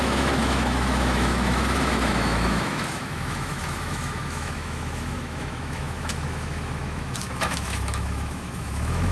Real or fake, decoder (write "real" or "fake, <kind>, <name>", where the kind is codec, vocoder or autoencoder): fake, autoencoder, DAC-VAE